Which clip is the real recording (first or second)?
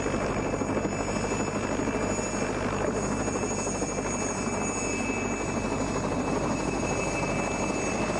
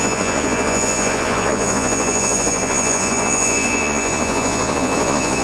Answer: first